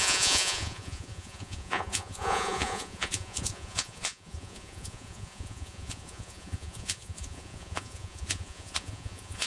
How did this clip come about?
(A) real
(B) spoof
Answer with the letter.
B